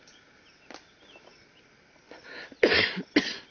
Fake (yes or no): no